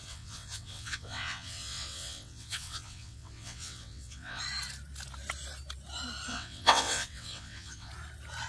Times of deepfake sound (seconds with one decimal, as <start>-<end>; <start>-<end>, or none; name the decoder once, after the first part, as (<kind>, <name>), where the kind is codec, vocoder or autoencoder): 0.0-4.4 (vocoder, WaveNeXt); 6.3-7.9